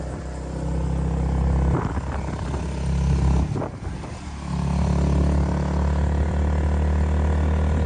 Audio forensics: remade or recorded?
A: recorded